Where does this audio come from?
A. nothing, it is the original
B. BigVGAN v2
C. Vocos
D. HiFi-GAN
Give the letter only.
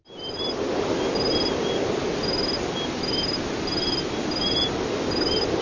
A